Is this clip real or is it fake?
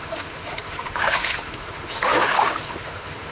fake